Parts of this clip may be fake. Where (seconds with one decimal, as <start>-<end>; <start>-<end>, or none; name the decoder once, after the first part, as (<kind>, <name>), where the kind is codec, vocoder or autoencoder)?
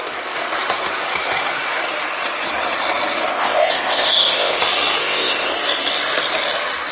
3.3-4.6 (codec, ZipCodec); 5.0-5.5